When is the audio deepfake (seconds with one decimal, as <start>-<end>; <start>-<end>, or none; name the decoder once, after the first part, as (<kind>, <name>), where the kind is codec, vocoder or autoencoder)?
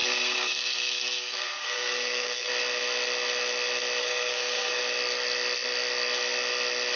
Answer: 0.0-2.5 (codec, SNAC); 4.0-4.8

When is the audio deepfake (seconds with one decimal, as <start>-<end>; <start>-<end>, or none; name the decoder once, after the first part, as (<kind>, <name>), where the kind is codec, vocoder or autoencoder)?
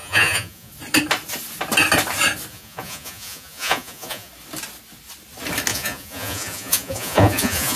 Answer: 0.0-0.7 (vocoder, Vocos); 2.5-4.3; 5.7-7.8